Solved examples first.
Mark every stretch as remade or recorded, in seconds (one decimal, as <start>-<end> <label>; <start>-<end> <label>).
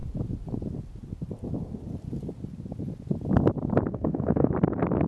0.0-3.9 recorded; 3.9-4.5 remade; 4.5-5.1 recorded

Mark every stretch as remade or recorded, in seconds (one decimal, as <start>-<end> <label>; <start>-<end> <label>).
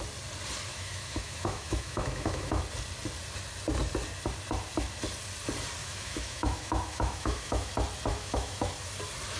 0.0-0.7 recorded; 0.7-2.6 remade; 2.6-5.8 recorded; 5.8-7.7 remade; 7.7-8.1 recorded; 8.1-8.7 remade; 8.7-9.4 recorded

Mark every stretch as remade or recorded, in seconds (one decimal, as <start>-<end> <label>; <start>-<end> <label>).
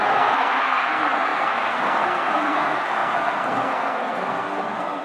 0.0-5.0 remade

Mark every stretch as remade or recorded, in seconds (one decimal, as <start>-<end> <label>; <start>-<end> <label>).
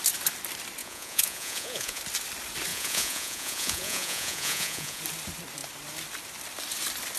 0.0-0.8 recorded; 0.8-2.0 remade; 2.0-2.7 recorded; 2.7-5.0 remade; 5.0-7.2 recorded